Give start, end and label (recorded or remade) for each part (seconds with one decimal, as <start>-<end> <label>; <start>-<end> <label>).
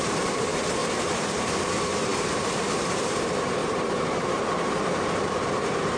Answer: 0.0-6.0 remade